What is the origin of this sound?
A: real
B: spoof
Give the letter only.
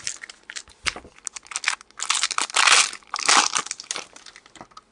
A